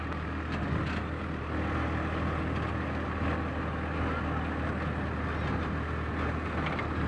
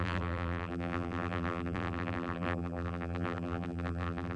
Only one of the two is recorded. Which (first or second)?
first